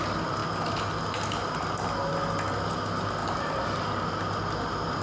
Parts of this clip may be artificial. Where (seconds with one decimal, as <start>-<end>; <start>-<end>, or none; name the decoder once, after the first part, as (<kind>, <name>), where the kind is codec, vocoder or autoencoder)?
3.2-4.3 (vocoder, BigVGAN v2)